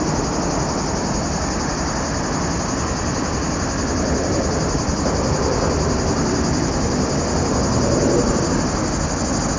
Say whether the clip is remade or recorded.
recorded